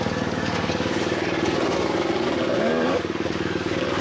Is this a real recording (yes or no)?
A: no